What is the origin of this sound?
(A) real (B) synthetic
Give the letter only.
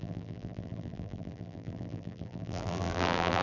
B